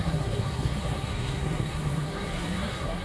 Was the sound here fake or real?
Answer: fake